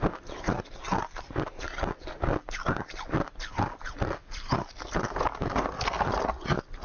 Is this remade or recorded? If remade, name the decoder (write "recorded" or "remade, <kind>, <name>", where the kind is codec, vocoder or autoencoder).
recorded